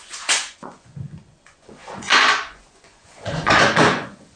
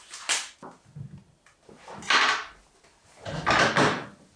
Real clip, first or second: second